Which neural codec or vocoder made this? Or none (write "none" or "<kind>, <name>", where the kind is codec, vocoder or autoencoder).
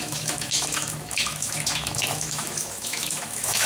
autoencoder, DAC-VAE